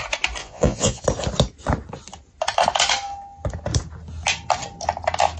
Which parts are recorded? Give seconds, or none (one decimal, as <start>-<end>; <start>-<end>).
0.0-0.4; 1.0-5.4